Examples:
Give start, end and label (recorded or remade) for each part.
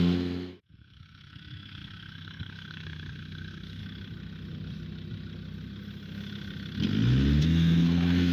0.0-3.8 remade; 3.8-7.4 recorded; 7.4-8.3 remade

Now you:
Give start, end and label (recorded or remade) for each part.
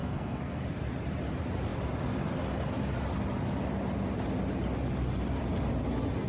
0.0-0.6 remade; 0.6-6.3 recorded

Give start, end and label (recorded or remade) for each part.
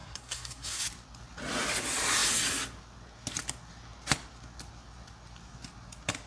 0.0-0.8 remade; 0.8-6.3 recorded